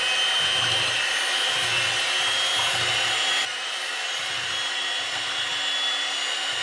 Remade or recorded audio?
recorded